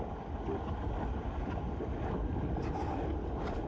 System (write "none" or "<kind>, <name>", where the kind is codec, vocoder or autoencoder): none